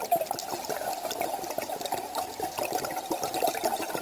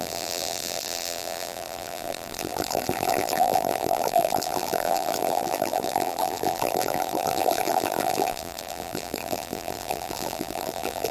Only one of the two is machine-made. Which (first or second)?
second